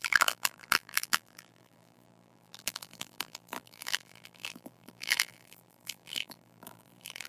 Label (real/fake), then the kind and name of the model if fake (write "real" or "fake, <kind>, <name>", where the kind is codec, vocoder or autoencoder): fake, vocoder, BigVGAN v2